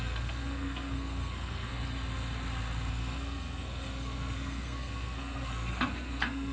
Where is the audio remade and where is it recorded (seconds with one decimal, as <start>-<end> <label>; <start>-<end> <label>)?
0.0-1.8 remade; 1.8-2.9 recorded; 2.9-6.5 remade